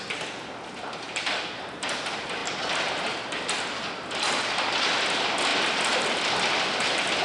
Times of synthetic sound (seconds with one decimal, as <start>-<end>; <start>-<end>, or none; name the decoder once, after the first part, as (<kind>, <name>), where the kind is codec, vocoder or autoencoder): none